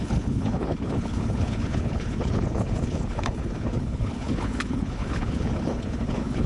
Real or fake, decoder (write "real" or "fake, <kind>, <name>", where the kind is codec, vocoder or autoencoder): fake, codec, HILCodec